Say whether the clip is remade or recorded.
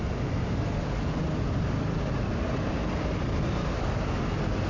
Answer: recorded